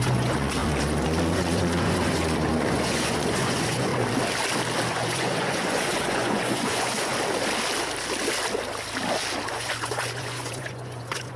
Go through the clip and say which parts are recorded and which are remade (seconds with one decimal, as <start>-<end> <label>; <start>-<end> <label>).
0.0-3.9 remade; 3.9-4.9 recorded; 4.9-7.1 remade; 7.1-9.5 recorded; 9.5-11.4 remade